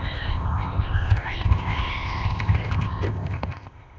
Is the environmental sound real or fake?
fake